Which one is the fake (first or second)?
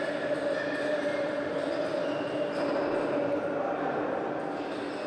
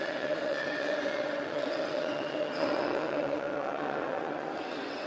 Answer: second